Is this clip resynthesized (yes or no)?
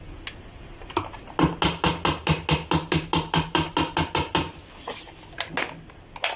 no